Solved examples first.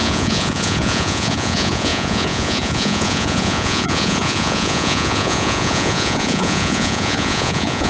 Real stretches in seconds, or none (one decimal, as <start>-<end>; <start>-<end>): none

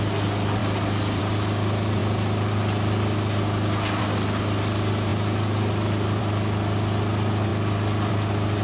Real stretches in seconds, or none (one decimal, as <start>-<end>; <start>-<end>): 0.0-8.6

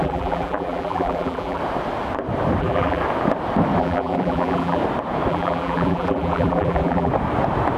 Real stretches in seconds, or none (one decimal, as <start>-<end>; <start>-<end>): 1.6-2.6; 3.0-3.8; 4.8-5.3; 7.1-7.8